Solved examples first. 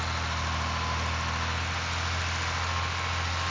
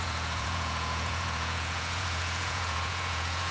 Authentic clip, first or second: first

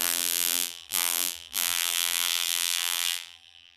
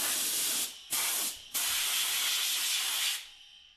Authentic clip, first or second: second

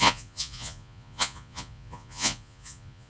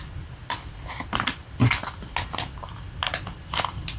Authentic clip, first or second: second